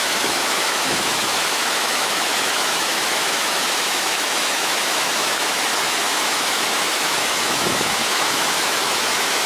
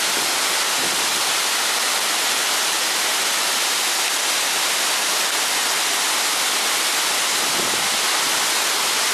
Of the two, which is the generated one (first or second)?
first